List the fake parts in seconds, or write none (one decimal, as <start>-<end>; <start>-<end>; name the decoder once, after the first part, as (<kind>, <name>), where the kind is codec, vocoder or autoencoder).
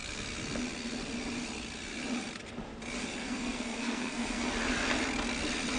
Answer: 3.2-4.5 (codec, SNAC)